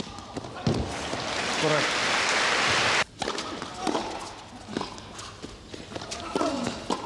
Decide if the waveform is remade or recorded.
recorded